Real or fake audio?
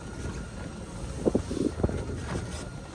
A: real